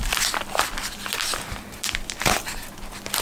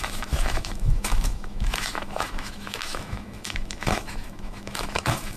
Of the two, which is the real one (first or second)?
first